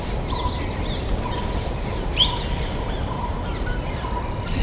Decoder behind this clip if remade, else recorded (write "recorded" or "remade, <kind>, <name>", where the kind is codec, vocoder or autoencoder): recorded